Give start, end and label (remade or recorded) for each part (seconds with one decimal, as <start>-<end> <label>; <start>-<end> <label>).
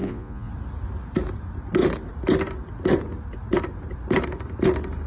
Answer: 0.0-0.5 remade; 0.5-5.1 recorded